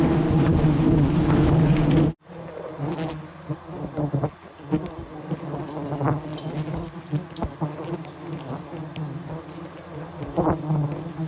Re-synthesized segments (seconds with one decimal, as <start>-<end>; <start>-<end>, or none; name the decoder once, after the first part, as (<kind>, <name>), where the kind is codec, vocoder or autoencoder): none